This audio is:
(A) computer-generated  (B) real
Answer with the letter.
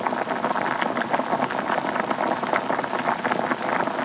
B